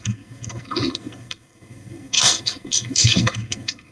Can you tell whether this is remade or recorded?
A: remade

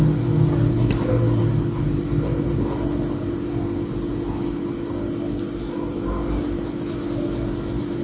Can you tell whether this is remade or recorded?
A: recorded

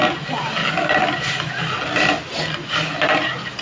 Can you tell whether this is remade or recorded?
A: recorded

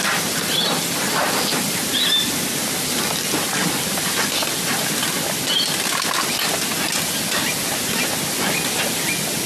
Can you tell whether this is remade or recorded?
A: recorded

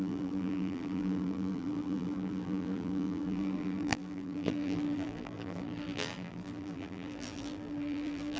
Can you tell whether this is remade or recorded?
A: remade